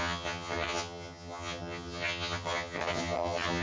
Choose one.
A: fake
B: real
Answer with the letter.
A